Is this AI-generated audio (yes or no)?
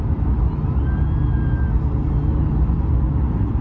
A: no